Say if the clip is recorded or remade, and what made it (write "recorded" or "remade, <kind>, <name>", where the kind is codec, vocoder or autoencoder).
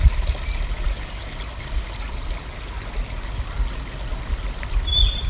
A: recorded